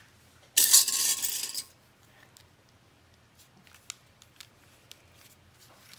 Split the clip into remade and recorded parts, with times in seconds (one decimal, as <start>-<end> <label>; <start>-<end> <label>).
0.0-6.0 recorded